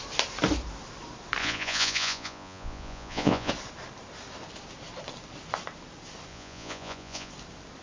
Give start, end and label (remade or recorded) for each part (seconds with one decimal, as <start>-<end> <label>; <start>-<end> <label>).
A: 0.0-1.4 recorded; 1.4-3.5 remade; 3.5-6.3 recorded; 6.3-7.3 remade; 7.3-7.8 recorded